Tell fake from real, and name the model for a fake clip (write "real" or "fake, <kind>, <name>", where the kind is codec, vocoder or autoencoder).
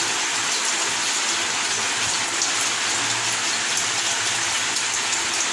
real